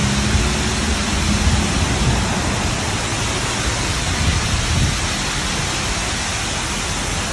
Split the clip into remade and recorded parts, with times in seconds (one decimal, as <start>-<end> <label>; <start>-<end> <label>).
0.0-7.3 recorded